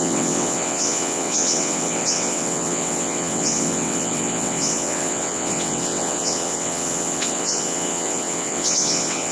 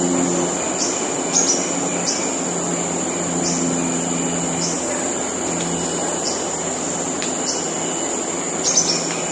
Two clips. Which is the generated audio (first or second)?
first